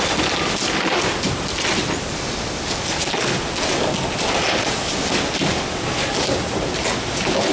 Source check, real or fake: real